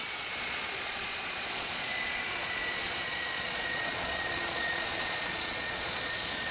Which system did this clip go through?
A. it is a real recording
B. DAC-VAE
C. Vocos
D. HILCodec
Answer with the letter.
C